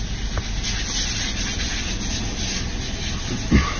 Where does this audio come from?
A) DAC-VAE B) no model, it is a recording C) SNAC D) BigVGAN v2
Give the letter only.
B